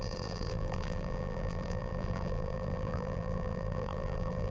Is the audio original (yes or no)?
no